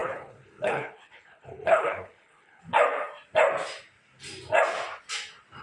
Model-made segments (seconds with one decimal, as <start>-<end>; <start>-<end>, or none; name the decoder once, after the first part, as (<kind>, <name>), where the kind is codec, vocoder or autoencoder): 0.0-2.6 (codec, HILCodec)